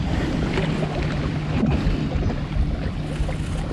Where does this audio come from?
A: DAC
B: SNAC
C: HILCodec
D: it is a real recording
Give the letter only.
D